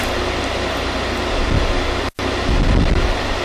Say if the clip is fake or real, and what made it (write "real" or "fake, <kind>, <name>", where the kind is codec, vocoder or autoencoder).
real